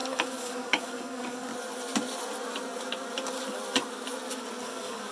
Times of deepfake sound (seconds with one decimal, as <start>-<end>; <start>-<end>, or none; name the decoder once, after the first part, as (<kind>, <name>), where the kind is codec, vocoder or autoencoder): 0.0-1.5 (codec, DAC); 4.6-5.1